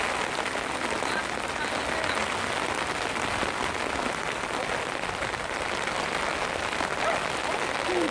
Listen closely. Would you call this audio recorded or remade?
recorded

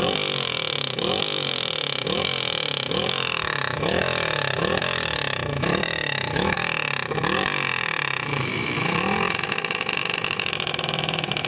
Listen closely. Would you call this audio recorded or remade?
remade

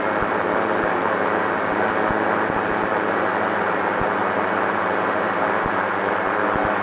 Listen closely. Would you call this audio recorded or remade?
recorded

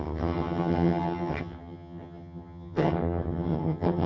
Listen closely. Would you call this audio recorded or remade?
remade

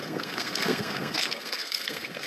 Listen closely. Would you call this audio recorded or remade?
remade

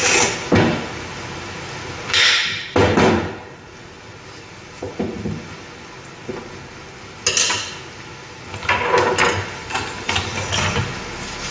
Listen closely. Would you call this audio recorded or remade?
recorded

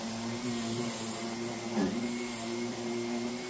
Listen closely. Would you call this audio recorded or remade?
recorded